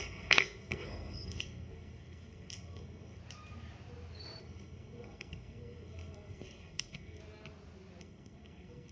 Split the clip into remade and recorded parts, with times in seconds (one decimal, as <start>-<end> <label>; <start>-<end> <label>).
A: 0.0-3.2 remade; 3.2-4.4 recorded; 4.4-7.2 remade; 7.2-8.0 recorded; 8.0-8.9 remade